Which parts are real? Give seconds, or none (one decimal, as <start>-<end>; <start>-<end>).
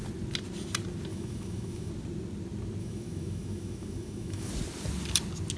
0.0-1.1; 1.9-2.8; 4.5-5.6